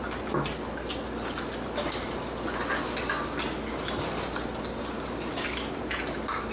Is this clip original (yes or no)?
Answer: yes